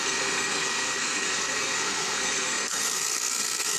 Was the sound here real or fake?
fake